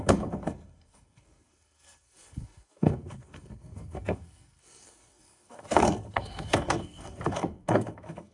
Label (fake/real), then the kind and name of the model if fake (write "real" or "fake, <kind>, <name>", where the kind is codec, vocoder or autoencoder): fake, codec, SNAC